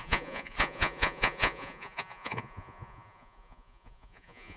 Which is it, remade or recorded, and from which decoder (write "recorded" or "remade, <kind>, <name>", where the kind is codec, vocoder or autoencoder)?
remade, vocoder, Vocos